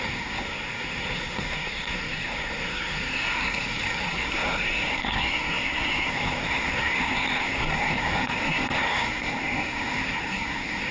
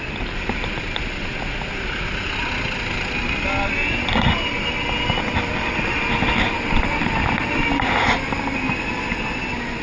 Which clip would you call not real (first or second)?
first